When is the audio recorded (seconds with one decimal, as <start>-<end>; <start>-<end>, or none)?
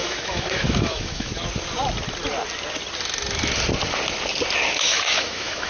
1.3-4.7